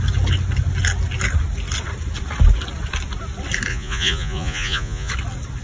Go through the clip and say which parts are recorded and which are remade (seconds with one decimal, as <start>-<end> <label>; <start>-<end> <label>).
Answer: 0.0-3.7 recorded; 3.7-5.1 remade; 5.1-5.6 recorded